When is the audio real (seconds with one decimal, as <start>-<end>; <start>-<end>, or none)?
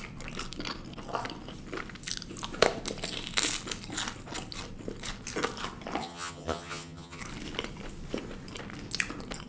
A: 0.0-6.0; 7.2-9.5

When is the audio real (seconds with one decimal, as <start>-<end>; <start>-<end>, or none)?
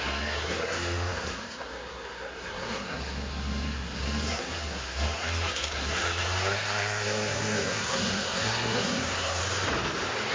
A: 9.4-10.3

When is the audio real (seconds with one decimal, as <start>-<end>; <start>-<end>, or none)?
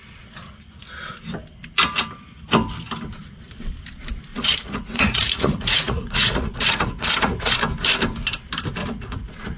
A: 0.0-4.3; 7.6-8.8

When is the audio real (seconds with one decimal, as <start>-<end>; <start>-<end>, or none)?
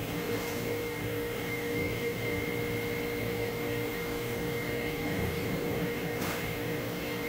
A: 2.4-3.2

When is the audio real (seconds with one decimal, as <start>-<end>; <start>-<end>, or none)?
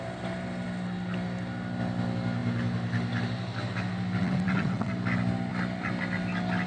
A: 0.0-4.2; 4.9-6.7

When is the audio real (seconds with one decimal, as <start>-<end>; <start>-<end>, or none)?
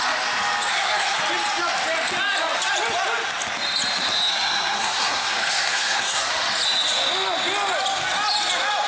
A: 0.0-0.7; 1.2-4.3; 6.3-8.9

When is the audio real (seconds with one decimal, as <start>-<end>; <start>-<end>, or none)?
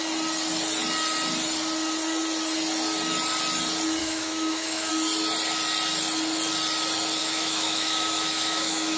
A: 0.0-4.0; 4.9-7.2